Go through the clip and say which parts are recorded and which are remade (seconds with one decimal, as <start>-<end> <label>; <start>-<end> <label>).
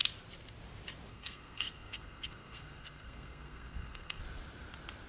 0.0-1.1 recorded; 1.1-4.2 remade; 4.2-5.1 recorded